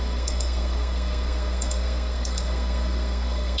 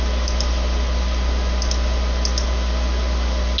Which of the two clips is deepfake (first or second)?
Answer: first